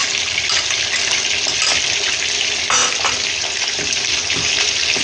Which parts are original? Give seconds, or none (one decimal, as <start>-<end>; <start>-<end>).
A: 0.0-2.8; 4.5-5.0